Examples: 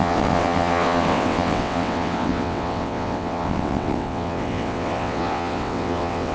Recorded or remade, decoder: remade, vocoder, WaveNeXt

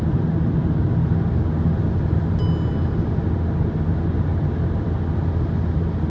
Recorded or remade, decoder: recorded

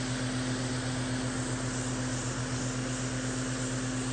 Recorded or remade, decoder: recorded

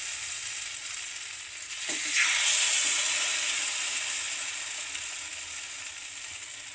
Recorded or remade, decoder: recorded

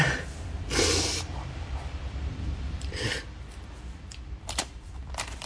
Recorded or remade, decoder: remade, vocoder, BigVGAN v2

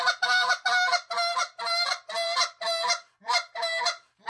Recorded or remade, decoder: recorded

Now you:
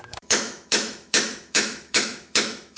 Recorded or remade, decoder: remade, autoencoder, DAC-VAE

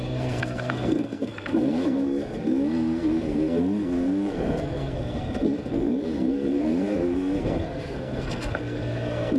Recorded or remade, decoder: remade, codec, SNAC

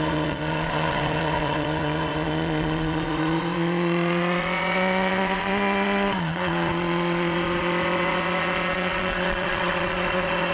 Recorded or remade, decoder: remade, vocoder, Vocos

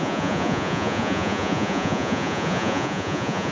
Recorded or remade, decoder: remade, vocoder, Vocos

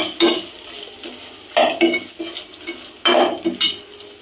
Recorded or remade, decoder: recorded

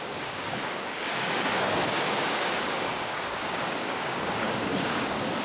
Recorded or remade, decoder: remade, codec, DAC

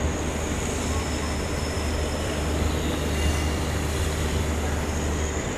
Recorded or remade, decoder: recorded